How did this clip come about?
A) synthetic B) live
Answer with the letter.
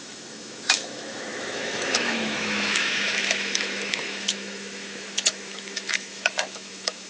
A